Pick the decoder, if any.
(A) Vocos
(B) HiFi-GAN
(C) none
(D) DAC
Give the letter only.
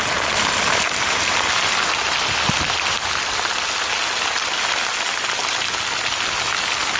C